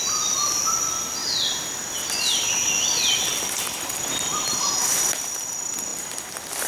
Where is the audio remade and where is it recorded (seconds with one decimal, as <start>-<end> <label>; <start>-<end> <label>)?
0.0-1.2 remade; 1.2-2.9 recorded; 2.9-3.3 remade; 3.3-4.9 recorded; 4.9-6.7 remade